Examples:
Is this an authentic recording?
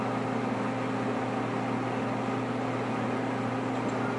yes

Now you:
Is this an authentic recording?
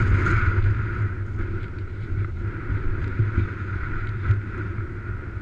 yes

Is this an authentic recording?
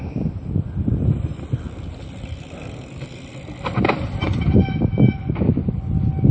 yes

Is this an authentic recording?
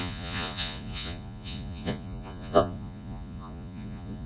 no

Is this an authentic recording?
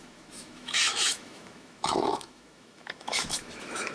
no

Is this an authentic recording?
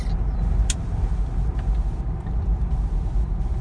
yes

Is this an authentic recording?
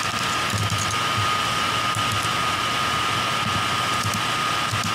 yes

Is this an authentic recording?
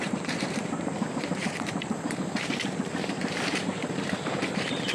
no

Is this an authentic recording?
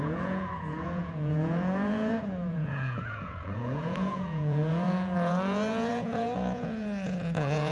no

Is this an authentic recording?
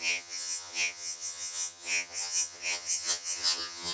no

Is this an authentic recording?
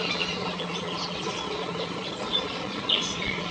no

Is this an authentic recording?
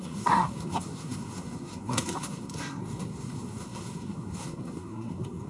no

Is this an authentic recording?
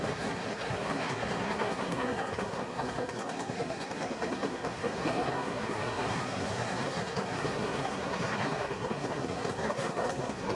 no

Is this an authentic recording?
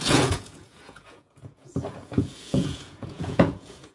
no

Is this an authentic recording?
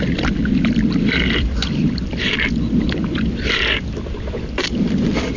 no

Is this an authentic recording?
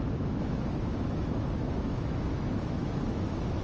no